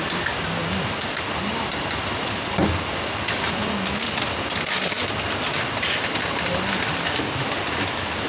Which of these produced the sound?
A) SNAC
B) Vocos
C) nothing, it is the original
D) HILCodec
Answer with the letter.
C